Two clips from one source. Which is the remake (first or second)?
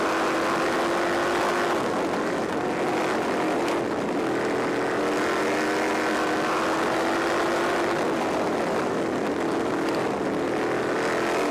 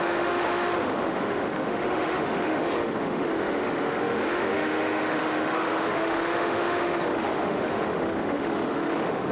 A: second